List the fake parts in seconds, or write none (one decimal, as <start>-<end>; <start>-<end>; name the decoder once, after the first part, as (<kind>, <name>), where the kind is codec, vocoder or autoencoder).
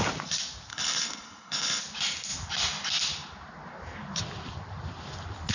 0.7-1.8 (codec, HILCodec)